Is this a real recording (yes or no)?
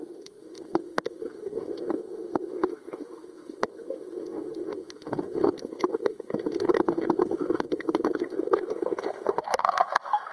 no